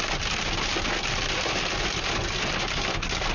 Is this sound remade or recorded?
recorded